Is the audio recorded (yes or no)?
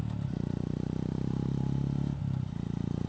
yes